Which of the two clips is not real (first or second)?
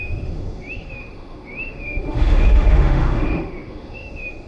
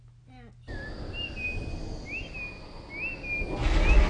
first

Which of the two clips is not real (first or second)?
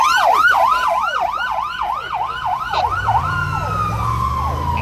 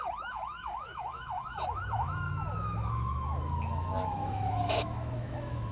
second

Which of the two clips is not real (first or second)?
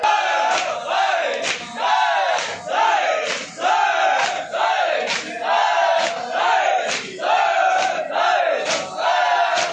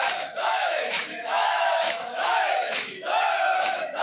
second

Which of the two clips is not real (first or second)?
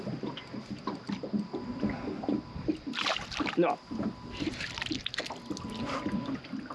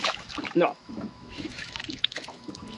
second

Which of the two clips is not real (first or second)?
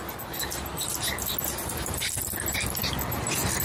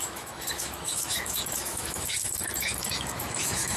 second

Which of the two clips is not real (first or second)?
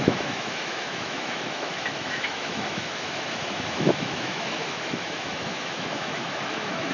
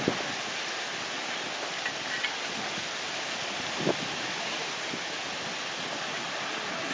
first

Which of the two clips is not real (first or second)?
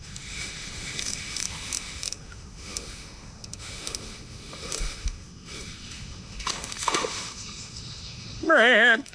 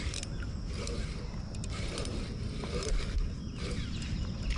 first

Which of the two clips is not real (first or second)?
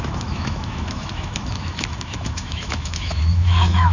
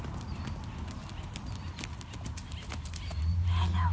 first